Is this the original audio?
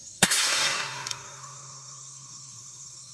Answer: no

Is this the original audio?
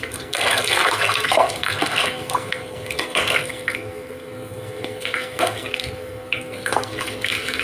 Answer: no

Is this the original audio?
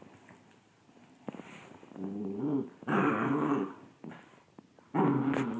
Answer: yes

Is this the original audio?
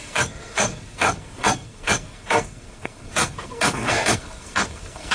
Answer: no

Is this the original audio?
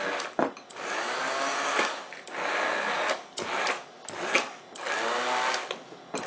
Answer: yes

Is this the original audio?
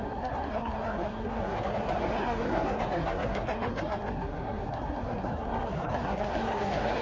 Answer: no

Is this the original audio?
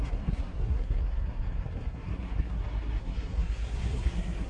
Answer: no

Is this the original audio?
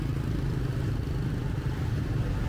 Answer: yes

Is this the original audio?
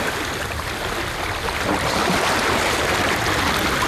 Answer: yes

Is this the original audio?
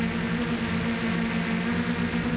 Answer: yes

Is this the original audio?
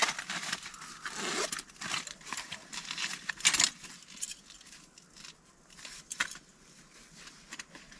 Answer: yes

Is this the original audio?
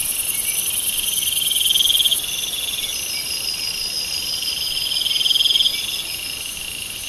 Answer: yes